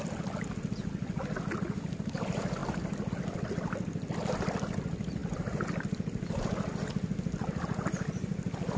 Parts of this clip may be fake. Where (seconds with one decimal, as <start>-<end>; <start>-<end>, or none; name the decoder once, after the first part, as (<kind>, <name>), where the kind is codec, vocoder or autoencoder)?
none

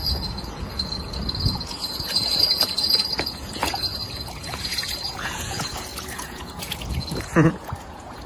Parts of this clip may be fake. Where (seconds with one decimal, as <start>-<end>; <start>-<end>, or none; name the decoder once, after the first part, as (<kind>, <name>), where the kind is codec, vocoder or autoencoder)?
0.0-8.3 (vocoder, Vocos)

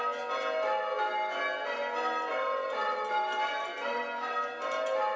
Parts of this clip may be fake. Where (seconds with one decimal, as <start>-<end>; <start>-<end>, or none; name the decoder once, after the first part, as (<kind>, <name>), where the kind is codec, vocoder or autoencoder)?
2.3-4.0 (vocoder, BigVGAN v2)

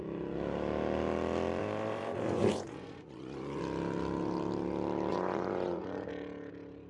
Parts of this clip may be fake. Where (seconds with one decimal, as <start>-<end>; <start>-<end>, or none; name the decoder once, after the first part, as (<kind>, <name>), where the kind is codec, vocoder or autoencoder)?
1.6-3.6 (vocoder, Vocos); 5.1-6.1

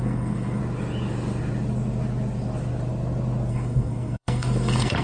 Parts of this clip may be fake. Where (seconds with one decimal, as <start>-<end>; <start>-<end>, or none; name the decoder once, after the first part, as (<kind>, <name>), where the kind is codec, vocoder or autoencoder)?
0.0-0.6 (codec, SNAC); 3.5-5.0

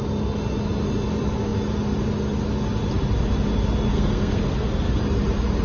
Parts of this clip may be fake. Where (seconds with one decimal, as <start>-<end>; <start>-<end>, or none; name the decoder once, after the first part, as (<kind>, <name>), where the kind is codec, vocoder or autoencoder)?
3.9-5.0 (codec, SNAC)

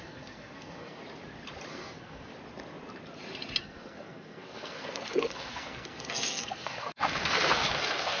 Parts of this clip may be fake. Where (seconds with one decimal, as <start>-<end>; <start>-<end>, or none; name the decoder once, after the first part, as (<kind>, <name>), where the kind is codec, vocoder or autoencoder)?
0.0-1.0 (codec, SNAC); 1.7-2.3; 3.6-8.2

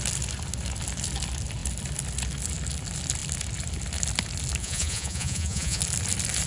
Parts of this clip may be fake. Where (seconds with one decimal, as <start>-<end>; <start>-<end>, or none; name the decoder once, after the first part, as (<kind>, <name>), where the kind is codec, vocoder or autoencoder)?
4.6-5.8 (vocoder, Vocos)